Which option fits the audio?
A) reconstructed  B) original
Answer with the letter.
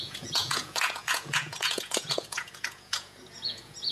A